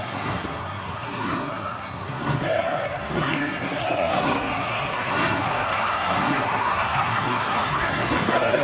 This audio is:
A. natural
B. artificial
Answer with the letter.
B